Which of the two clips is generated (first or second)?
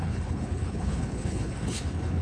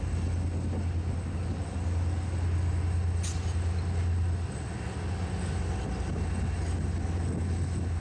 first